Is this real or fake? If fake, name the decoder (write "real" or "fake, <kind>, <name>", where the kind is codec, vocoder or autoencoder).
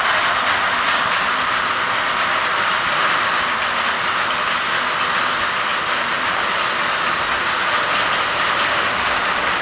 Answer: real